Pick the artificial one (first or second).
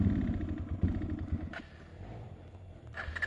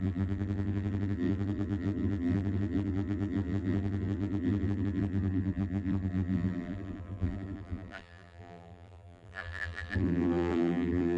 second